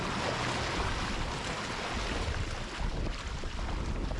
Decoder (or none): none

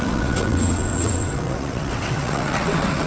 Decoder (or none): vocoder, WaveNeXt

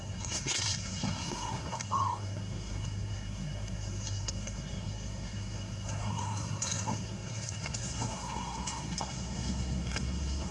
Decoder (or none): codec, SNAC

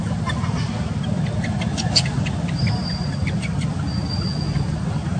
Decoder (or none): none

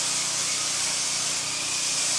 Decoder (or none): none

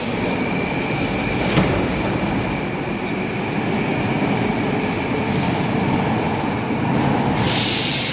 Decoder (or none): none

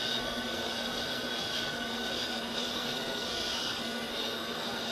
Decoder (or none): codec, SNAC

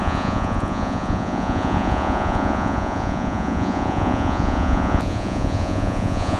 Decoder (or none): vocoder, Vocos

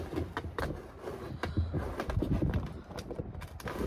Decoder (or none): none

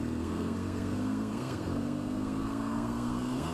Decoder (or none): codec, SNAC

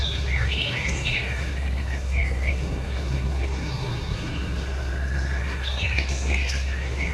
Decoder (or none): codec, SNAC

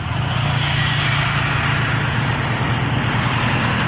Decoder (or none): none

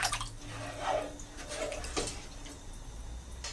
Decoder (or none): none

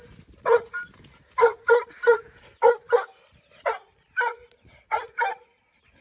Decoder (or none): none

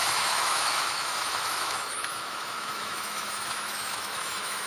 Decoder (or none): autoencoder, DAC-VAE